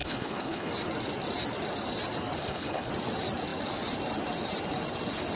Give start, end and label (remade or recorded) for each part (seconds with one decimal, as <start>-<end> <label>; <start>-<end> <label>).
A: 0.0-0.7 remade; 0.7-2.4 recorded; 2.4-2.9 remade; 2.9-5.4 recorded